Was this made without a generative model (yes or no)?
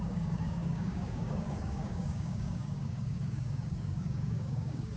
no